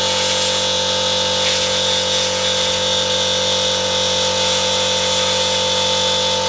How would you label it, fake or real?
fake